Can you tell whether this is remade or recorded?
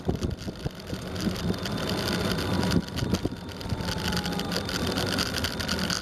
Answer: recorded